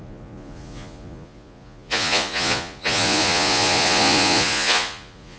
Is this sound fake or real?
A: fake